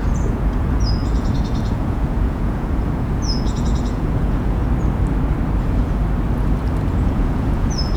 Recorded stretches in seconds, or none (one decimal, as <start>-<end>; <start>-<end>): 4.6-5.6; 6.0-6.9